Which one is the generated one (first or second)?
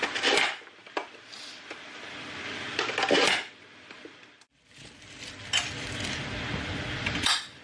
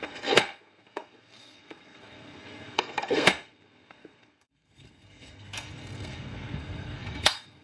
second